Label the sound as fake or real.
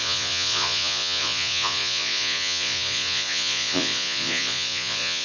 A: fake